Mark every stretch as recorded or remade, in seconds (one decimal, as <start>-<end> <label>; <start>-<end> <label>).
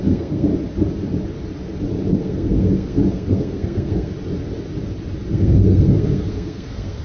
0.0-0.5 remade; 0.5-2.1 recorded; 2.1-4.1 remade; 4.1-5.3 recorded; 5.3-7.0 remade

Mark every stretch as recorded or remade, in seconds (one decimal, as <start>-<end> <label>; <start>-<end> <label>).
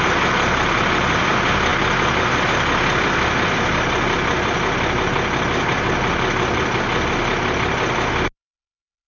0.0-9.1 recorded